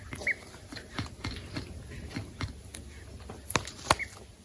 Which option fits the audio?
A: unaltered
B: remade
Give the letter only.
A